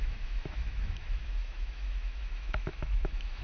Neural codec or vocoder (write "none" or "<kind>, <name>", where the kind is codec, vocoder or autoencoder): autoencoder, DAC-VAE